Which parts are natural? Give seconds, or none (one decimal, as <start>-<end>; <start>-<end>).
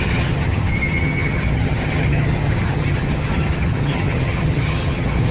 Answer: none